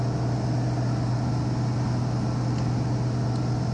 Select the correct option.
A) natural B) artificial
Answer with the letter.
A